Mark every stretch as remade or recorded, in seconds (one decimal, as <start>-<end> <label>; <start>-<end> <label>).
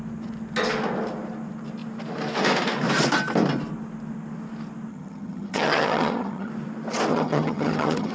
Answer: 0.0-4.9 recorded; 4.9-6.5 remade; 6.5-7.1 recorded; 7.1-8.1 remade